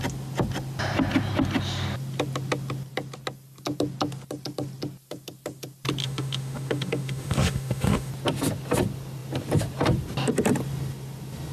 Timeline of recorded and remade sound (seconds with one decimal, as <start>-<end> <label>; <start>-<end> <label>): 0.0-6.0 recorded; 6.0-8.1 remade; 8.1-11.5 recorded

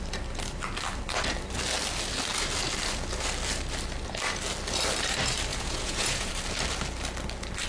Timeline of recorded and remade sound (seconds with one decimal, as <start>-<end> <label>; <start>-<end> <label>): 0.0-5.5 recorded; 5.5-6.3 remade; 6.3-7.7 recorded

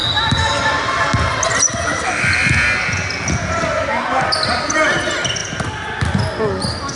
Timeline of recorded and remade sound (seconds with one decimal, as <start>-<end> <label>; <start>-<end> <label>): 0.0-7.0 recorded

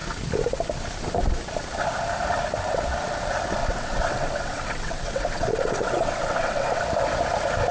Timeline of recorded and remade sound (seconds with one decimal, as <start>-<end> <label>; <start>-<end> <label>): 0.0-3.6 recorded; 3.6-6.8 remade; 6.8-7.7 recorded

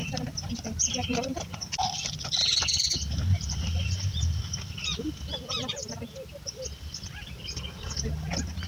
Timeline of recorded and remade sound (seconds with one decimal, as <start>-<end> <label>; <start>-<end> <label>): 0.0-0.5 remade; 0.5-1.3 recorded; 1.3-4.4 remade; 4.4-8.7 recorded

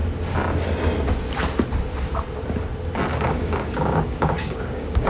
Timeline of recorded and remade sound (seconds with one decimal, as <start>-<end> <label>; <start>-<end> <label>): 0.0-3.1 recorded; 3.1-5.1 remade

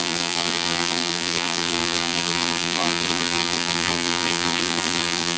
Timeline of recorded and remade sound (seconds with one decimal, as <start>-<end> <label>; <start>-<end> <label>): 0.0-5.4 remade